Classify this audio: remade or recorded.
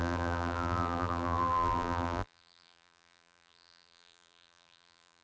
remade